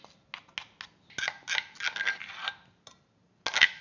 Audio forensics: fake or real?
real